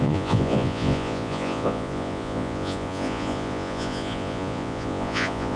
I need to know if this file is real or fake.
fake